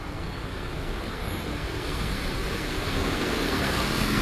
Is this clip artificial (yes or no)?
yes